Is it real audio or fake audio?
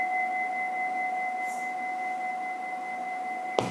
real